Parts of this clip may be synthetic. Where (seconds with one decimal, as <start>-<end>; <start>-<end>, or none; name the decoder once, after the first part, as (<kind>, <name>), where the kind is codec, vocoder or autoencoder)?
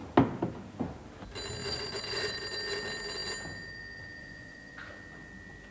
1.6-2.4 (vocoder, Vocos); 4.2-4.9